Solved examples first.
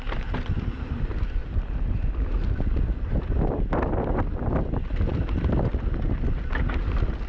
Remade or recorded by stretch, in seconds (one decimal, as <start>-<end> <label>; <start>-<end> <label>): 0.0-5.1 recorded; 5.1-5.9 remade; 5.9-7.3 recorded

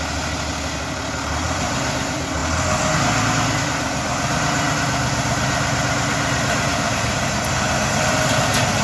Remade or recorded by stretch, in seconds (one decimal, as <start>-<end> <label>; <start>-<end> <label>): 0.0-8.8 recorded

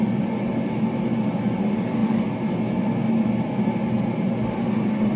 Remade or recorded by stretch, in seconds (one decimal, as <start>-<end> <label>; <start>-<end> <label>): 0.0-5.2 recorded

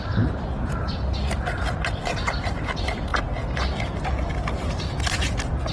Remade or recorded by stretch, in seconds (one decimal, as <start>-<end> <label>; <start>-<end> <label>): 0.0-3.1 remade; 3.1-4.6 recorded; 4.6-5.7 remade

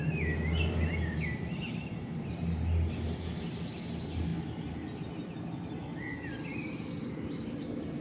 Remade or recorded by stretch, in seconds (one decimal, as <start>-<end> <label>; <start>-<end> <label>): 0.0-8.0 recorded

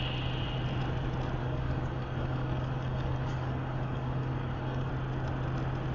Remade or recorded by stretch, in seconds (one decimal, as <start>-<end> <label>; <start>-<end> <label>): 0.0-1.4 recorded; 1.4-4.9 remade; 4.9-5.9 recorded